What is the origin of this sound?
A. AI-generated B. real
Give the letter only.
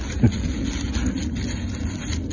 B